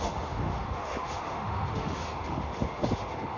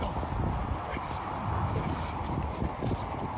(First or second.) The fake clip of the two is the first